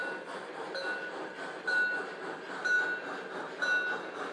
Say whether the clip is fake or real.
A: real